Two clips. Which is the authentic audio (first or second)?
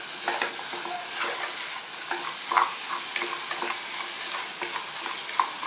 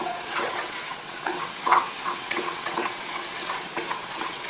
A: first